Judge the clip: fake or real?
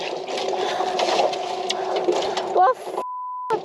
real